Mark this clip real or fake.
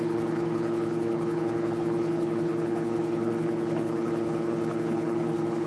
fake